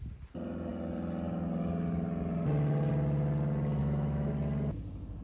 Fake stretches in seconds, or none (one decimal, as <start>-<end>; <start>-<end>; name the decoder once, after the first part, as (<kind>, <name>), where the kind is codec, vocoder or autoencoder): 3.8-4.3 (autoencoder, DAC-VAE)